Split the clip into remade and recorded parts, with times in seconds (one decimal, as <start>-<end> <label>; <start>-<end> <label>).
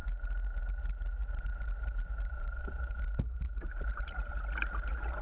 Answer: 0.0-1.2 recorded; 1.2-4.3 remade; 4.3-5.2 recorded